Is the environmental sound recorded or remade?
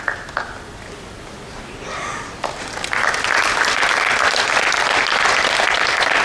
recorded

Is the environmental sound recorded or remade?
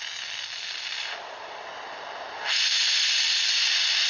recorded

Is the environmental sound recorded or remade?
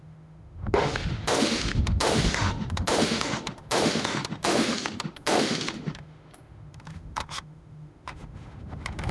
remade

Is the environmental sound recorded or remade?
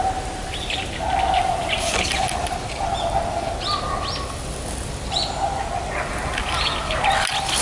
recorded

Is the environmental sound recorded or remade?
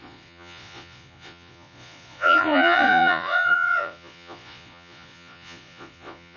remade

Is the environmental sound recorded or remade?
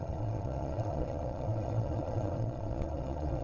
remade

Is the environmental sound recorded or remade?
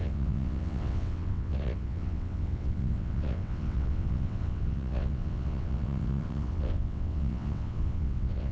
remade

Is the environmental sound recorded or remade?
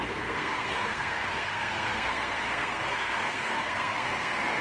remade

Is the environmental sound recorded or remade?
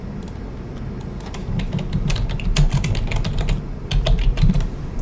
recorded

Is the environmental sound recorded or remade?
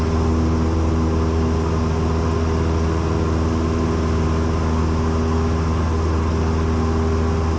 recorded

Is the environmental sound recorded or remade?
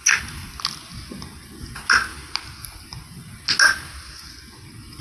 recorded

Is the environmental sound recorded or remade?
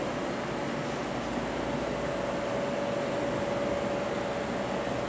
recorded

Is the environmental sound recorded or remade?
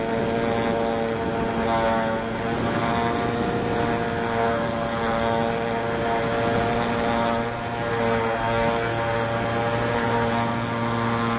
recorded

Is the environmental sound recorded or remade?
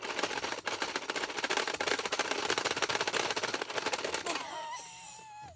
recorded